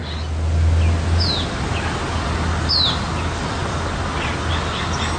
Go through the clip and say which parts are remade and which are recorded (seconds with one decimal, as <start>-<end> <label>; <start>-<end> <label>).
0.0-5.2 recorded